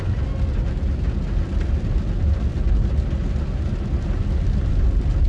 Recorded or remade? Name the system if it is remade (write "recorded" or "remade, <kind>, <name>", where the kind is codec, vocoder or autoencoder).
recorded